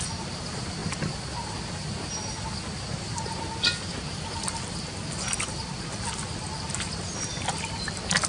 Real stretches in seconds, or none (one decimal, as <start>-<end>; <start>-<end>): 0.0-8.3